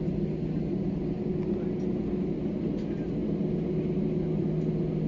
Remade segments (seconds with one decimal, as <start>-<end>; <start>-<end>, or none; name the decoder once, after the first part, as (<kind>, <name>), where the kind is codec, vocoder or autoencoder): none